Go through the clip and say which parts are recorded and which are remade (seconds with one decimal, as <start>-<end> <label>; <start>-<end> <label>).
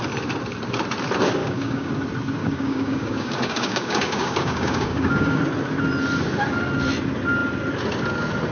0.0-1.4 recorded; 1.4-1.9 remade; 1.9-2.4 recorded; 2.4-5.4 remade; 5.4-8.5 recorded